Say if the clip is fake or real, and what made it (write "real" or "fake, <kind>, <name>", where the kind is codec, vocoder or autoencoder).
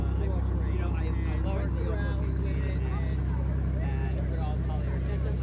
real